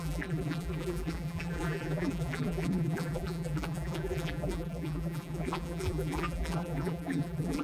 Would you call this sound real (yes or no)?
no